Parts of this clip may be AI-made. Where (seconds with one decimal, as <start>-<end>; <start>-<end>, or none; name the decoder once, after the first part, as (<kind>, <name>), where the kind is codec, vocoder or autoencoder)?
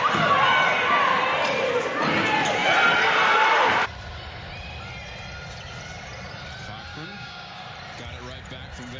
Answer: 6.9-7.6 (codec, DAC)